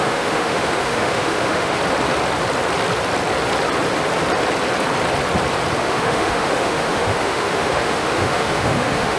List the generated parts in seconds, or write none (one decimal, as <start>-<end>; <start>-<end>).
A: 0.0-1.8; 5.8-9.2